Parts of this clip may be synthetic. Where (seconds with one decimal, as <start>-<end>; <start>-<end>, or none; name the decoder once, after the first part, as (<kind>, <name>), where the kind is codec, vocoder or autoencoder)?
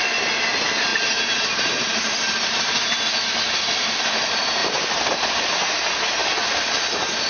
0.9-3.1 (vocoder, BigVGAN v2); 4.6-5.4; 6.2-6.7